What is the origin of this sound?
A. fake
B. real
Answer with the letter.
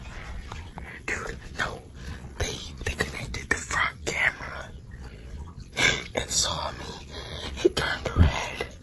A